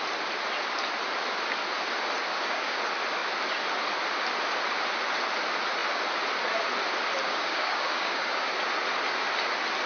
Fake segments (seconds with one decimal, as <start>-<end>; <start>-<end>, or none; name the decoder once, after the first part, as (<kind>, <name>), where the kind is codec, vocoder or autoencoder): 2.3-2.8 (codec, DAC); 7.2-8.5